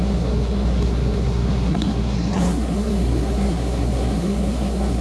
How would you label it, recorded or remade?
remade